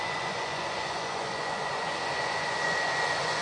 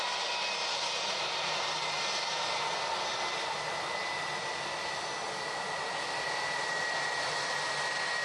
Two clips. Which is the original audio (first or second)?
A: second